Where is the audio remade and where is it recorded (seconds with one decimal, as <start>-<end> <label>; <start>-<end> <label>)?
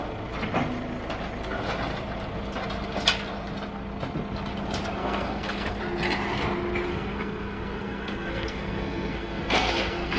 0.0-5.0 recorded; 5.0-5.8 remade; 5.8-6.9 recorded; 6.9-10.2 remade